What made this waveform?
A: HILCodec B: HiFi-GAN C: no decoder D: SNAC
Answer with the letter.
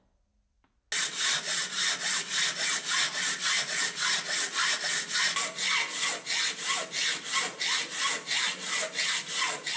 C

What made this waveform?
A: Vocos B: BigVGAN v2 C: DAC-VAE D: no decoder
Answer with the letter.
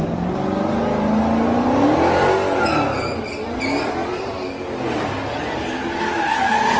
D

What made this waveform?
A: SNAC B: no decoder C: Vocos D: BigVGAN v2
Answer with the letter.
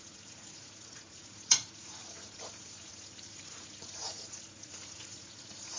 C